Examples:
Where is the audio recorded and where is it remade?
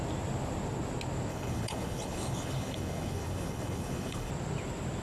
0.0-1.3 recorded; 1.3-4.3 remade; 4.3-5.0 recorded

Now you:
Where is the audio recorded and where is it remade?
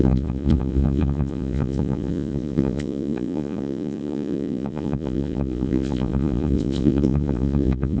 0.0-8.0 remade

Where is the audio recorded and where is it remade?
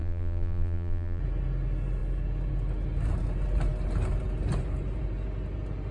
0.0-1.2 remade; 1.2-5.9 recorded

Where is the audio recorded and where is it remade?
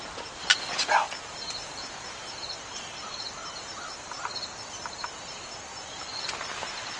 0.0-5.7 recorded; 5.7-6.2 remade; 6.2-7.0 recorded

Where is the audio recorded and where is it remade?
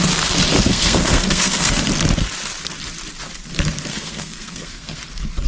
0.0-0.7 recorded; 0.7-1.8 remade; 1.8-3.9 recorded; 3.9-5.0 remade; 5.0-5.5 recorded